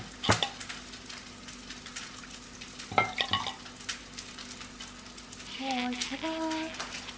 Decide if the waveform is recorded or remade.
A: recorded